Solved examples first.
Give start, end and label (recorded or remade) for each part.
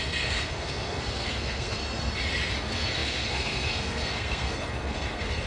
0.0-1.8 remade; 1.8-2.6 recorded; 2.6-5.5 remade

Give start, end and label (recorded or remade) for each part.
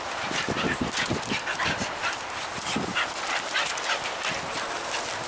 0.0-5.3 recorded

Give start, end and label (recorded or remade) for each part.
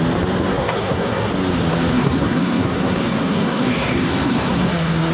0.0-0.5 recorded; 0.5-1.3 remade; 1.3-1.9 recorded; 1.9-5.1 remade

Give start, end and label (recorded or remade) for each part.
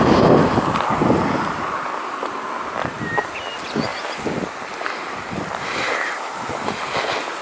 0.0-1.0 recorded; 1.0-2.0 remade; 2.0-7.4 recorded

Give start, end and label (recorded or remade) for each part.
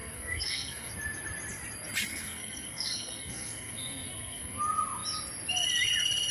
0.0-0.9 remade; 0.9-2.1 recorded; 2.1-4.6 remade; 4.6-6.3 recorded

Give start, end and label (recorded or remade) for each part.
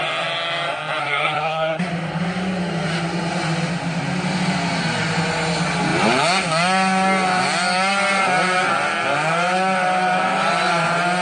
0.0-1.0 recorded; 1.0-1.9 remade; 1.9-11.2 recorded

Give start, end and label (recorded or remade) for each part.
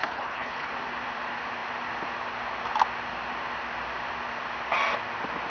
0.0-0.7 remade; 0.7-5.5 recorded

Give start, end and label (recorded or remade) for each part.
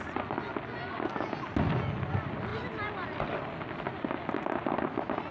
0.0-5.3 recorded